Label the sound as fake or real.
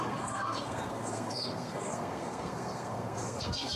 fake